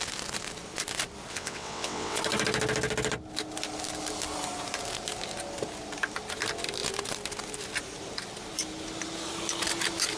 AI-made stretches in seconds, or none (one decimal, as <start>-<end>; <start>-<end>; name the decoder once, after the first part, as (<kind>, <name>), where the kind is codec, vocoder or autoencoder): 1.3-2.2 (vocoder, WaveNeXt)